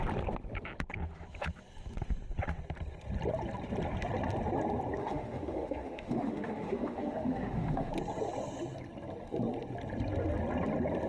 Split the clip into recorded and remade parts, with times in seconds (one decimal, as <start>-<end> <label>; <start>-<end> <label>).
0.0-5.0 recorded; 5.0-7.9 remade; 7.9-11.1 recorded